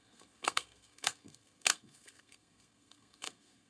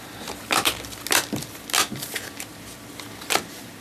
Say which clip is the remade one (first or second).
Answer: first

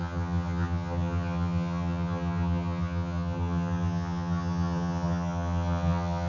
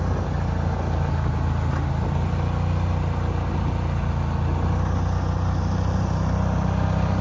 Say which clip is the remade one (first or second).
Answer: first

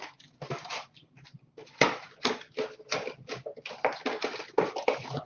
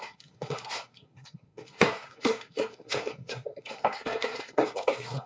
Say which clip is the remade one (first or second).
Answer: second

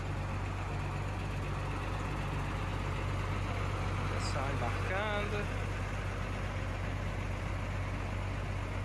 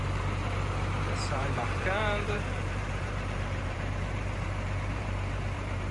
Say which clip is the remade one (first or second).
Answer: second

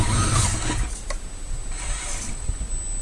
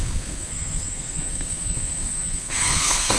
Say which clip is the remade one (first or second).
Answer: second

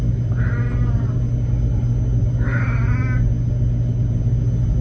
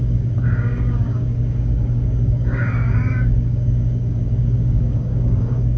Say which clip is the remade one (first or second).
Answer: second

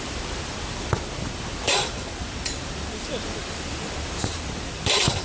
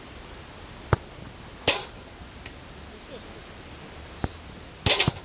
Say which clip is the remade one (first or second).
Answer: first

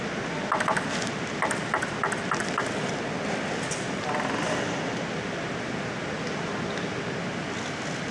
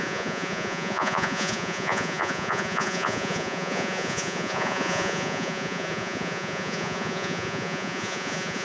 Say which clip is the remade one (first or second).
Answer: second